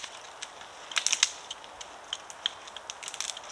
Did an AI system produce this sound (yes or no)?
no